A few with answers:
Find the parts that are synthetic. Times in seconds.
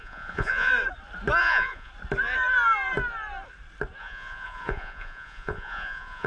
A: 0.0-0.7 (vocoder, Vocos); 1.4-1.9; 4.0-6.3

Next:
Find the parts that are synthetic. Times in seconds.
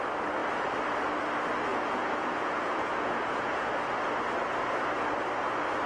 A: 1.7-3.7 (vocoder, Vocos)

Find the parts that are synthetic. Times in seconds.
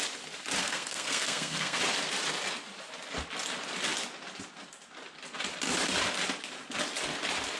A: 0.6-1.8 (codec, SNAC)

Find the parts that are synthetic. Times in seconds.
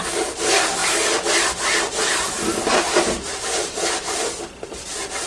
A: none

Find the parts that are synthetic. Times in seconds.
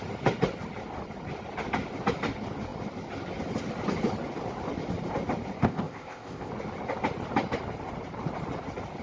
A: 5.6-6.5 (codec, ZipCodec)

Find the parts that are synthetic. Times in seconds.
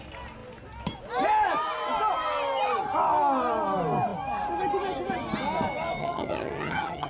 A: 6.0-7.1 (vocoder, HiFi-GAN)